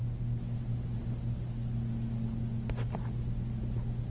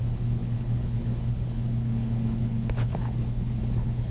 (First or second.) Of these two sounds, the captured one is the first